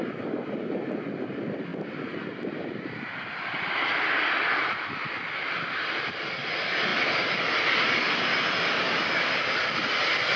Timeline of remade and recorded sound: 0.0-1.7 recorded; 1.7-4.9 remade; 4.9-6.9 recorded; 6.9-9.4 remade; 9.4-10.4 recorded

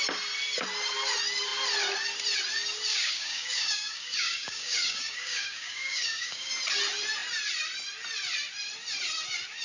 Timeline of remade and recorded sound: 0.0-2.9 recorded; 2.9-6.5 remade; 6.5-9.6 recorded

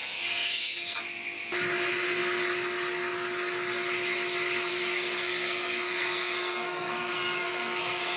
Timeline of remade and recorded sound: 0.0-1.0 remade; 1.0-4.7 recorded; 4.7-8.2 remade

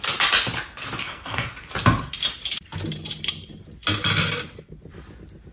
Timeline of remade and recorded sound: 0.0-1.0 recorded; 1.0-1.5 remade; 1.5-5.5 recorded

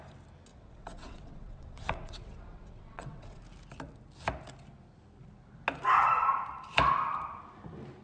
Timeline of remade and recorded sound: 0.0-0.5 recorded; 0.5-3.4 remade; 3.4-8.0 recorded

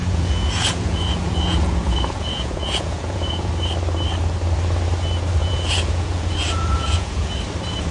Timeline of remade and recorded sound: 0.0-3.5 remade; 3.5-5.4 recorded; 5.4-7.3 remade; 7.3-7.9 recorded

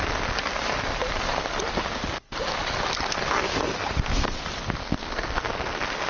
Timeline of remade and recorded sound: 0.0-4.8 recorded; 4.8-5.5 remade; 5.5-6.1 recorded